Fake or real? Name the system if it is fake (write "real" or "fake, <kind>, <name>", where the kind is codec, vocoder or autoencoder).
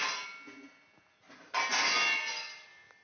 real